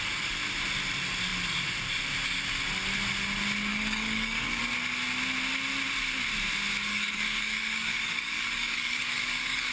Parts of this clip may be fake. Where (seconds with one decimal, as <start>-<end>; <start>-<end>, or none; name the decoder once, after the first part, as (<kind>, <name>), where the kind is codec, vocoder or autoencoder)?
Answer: 3.7-4.6 (codec, DAC); 6.9-9.7